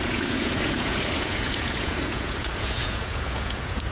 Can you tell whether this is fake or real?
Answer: fake